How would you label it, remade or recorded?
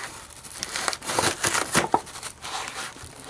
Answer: remade